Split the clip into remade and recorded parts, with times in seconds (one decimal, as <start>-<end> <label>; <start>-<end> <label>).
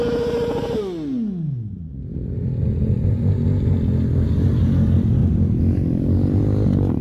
0.0-1.8 recorded; 1.8-3.1 remade; 3.1-5.2 recorded; 5.2-6.4 remade; 6.4-7.0 recorded